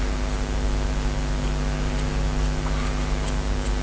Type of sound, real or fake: real